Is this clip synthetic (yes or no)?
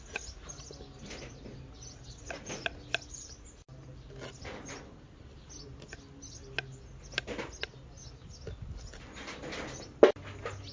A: no